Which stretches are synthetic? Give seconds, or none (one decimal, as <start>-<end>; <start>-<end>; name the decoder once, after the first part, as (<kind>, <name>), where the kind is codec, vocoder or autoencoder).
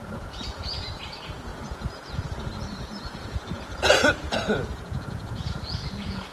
0.0-6.3 (vocoder, Vocos)